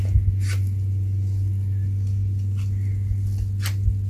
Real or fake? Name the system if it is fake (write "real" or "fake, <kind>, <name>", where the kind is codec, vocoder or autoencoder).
real